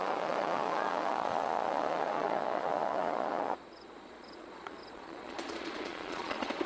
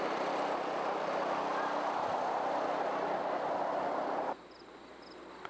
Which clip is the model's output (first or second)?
first